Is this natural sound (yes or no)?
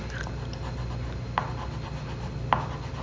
yes